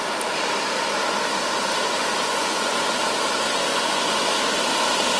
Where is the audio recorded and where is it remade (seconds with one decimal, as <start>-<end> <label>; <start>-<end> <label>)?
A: 0.0-2.0 recorded; 2.0-3.0 remade; 3.0-3.7 recorded; 3.7-4.3 remade; 4.3-5.2 recorded